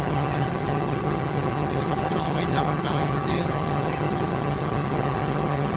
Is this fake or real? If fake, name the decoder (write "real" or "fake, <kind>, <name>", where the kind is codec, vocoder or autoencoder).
fake, vocoder, HiFi-GAN